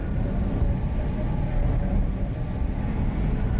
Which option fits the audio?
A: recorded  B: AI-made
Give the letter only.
A